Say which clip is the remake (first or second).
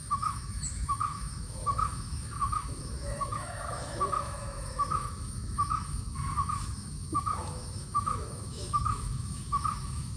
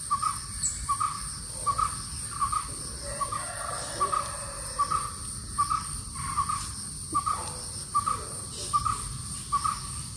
first